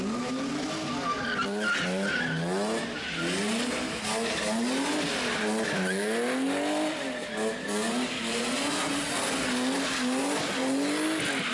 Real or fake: real